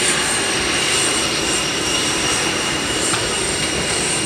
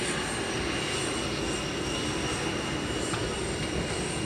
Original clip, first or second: second